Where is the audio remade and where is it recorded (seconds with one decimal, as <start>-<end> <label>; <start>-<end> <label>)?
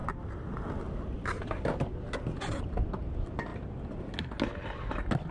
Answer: 0.0-5.3 recorded